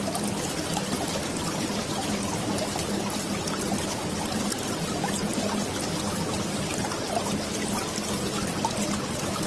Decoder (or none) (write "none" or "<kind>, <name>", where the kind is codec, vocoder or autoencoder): none